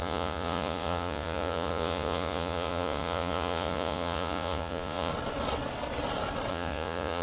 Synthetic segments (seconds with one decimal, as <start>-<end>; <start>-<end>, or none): 0.0-5.1; 6.5-7.2